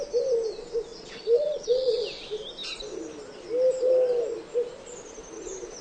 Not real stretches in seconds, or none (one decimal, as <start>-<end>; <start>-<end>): 0.9-2.0